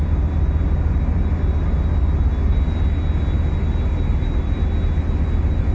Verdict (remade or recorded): recorded